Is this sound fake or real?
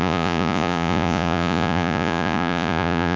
fake